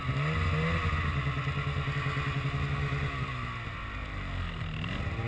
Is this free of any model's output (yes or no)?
yes